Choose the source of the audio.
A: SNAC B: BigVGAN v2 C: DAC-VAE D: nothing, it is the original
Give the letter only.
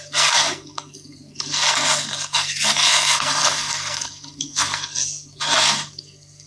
A